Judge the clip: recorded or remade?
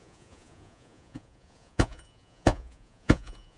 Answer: remade